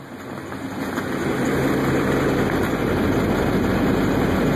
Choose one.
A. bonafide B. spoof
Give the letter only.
A